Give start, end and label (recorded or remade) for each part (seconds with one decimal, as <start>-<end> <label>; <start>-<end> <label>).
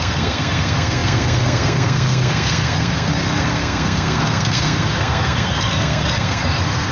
0.0-6.9 remade